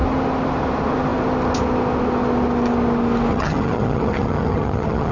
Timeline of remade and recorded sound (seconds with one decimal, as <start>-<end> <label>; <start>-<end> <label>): 0.0-3.3 recorded; 3.3-5.1 remade